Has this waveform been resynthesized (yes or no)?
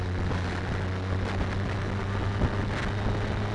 no